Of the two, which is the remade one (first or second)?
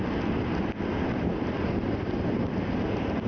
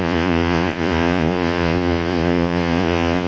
second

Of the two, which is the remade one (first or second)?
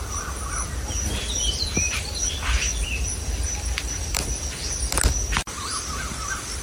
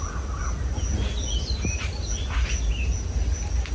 first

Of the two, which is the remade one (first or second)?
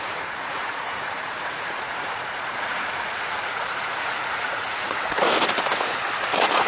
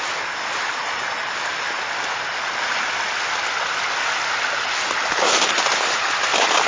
first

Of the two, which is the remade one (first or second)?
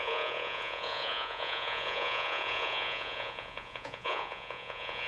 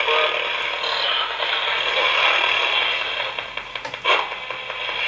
first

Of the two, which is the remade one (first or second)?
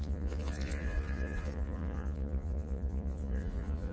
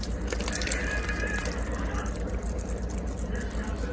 first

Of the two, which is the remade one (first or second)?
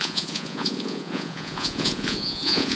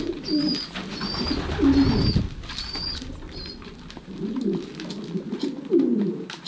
first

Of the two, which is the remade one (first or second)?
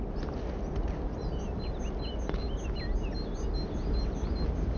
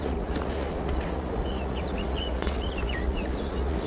second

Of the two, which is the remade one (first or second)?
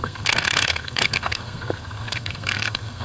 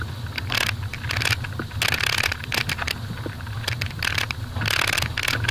first